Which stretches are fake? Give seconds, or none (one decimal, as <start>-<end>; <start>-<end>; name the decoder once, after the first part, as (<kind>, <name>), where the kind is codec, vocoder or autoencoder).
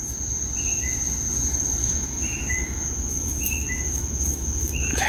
1.8-5.1 (autoencoder, DAC-VAE)